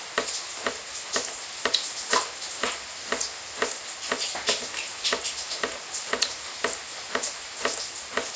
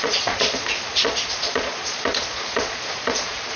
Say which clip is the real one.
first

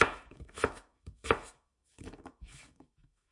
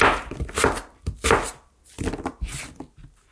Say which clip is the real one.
second